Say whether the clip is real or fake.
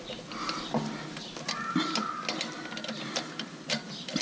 real